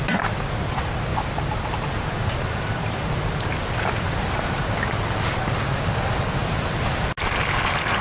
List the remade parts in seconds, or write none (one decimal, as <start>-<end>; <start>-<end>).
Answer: 1.1-2.0; 6.4-7.1